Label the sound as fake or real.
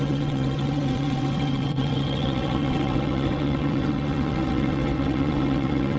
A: fake